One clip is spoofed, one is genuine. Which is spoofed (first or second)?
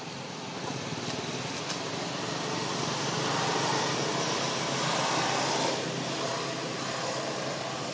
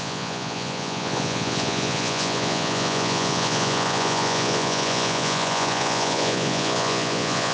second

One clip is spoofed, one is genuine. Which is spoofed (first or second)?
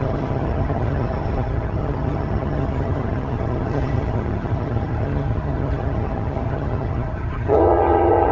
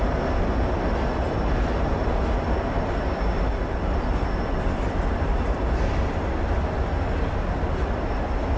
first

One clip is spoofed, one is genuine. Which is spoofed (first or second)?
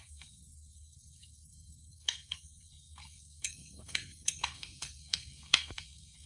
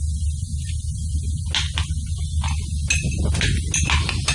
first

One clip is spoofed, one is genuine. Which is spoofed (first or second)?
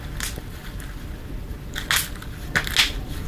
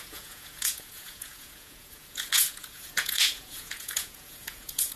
second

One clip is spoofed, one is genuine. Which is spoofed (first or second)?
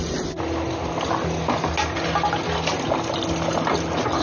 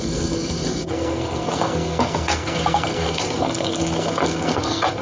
second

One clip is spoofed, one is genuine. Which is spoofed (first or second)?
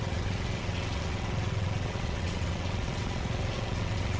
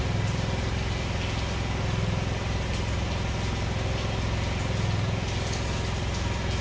first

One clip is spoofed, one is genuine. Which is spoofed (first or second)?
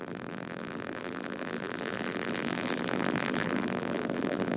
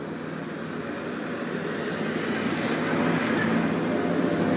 first